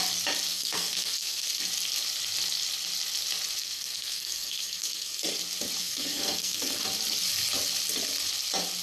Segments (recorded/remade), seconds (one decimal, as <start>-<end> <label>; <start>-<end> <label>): 0.0-0.5 recorded; 0.5-1.6 remade; 1.6-3.6 recorded; 3.6-5.3 remade; 5.3-5.8 recorded; 5.8-6.8 remade; 6.8-8.8 recorded